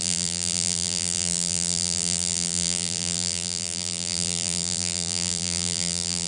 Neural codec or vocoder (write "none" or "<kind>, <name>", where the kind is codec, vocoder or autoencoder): vocoder, BigVGAN v2